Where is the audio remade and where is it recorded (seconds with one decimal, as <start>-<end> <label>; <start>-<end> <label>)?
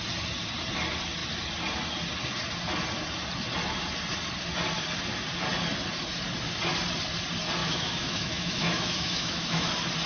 0.0-7.6 recorded; 7.6-9.7 remade; 9.7-10.1 recorded